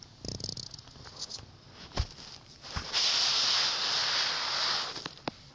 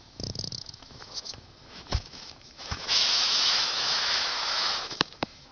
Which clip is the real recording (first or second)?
first